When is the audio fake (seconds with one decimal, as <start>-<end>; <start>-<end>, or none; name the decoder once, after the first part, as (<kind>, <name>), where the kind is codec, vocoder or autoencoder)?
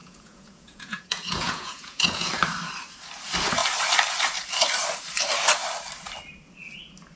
0.0-2.3 (vocoder, Vocos)